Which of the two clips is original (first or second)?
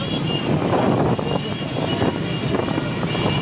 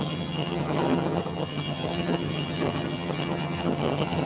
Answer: first